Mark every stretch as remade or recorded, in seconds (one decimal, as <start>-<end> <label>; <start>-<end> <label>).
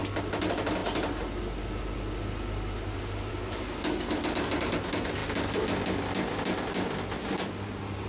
0.0-8.1 recorded